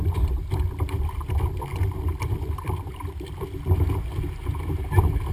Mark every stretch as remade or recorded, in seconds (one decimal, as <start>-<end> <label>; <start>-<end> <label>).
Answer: 0.0-5.3 recorded